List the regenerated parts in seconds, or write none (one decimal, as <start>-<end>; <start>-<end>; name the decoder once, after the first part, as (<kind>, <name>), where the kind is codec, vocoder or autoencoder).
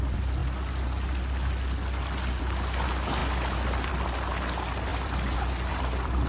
4.9-6.3 (vocoder, BigVGAN v2)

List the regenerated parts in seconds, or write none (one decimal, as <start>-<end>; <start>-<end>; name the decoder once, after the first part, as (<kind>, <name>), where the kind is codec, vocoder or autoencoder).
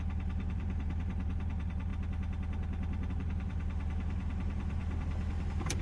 0.0-1.9 (vocoder, BigVGAN v2); 3.1-4.8; 5.3-5.8